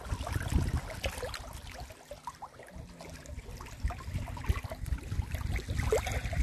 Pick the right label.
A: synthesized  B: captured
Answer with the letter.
B